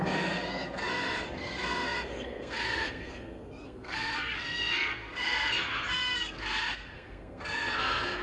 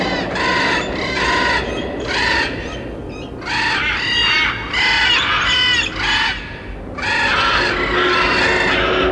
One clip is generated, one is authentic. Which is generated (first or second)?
first